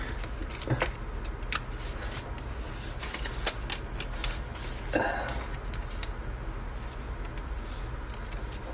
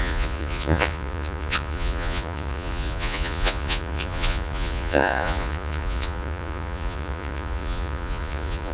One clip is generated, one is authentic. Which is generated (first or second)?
second